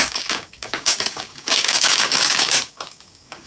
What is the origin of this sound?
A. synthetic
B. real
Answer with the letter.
A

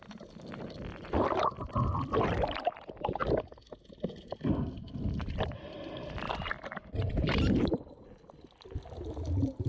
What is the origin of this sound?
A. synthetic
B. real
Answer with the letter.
B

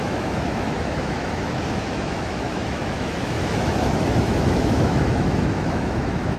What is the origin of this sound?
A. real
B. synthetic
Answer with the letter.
B